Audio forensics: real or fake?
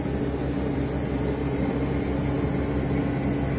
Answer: real